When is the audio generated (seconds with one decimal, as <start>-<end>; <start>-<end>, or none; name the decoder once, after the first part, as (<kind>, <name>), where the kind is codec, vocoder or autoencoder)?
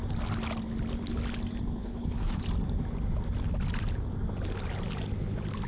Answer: 1.8-2.4 (codec, HILCodec)